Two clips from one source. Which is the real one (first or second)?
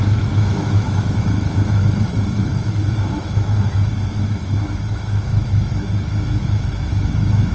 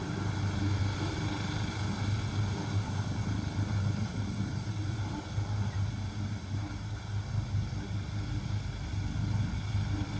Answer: second